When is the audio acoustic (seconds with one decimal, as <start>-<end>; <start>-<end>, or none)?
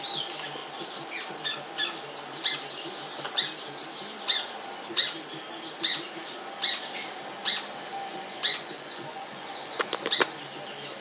0.0-7.9; 9.9-11.0